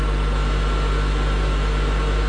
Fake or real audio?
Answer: real